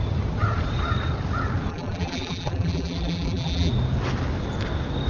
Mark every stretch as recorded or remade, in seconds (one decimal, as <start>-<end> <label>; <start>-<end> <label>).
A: 0.0-1.7 recorded; 1.7-3.7 remade; 3.7-5.1 recorded